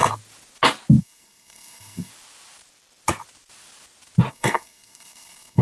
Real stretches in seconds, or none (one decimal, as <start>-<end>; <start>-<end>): 0.0-1.0; 2.1-4.3